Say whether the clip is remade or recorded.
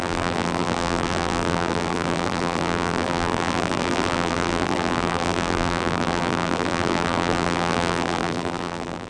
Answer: remade